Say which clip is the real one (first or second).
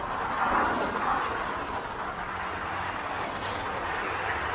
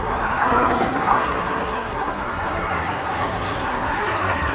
first